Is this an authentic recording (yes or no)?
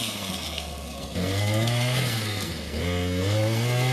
no